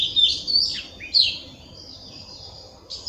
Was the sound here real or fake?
real